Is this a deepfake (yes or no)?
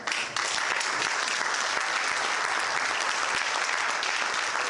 no